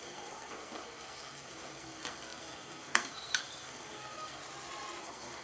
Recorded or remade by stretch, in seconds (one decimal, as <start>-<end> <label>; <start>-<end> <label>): 0.0-4.4 remade; 4.4-5.0 recorded; 5.0-5.4 remade